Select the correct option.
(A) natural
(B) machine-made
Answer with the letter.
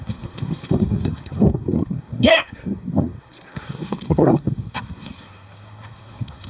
B